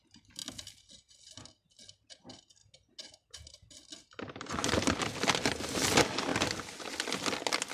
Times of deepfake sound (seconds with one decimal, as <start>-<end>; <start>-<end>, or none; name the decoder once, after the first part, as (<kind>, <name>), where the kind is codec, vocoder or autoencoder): none